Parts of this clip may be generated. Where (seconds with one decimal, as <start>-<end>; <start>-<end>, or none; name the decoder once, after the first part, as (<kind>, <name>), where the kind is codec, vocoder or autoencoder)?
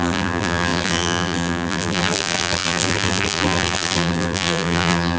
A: 0.0-5.2 (vocoder, BigVGAN v2)